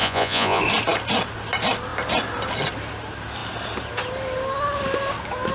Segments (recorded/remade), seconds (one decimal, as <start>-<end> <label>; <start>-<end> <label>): 0.0-0.6 remade; 0.6-5.5 recorded